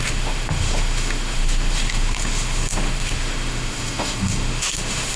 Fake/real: fake